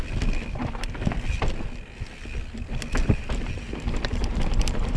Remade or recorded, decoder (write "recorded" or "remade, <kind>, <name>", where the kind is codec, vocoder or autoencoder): recorded